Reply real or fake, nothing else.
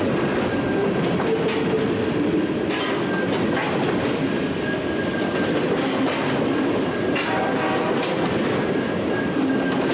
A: real